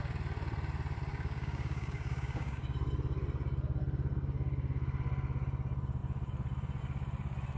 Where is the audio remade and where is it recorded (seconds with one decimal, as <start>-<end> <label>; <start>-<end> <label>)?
0.0-1.1 recorded; 1.1-2.6 remade; 2.6-7.6 recorded